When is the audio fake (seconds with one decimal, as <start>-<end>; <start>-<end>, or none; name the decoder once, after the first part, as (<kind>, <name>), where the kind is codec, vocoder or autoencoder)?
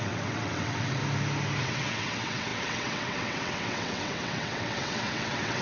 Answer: 0.0-1.0 (vocoder, WaveNeXt); 1.6-5.6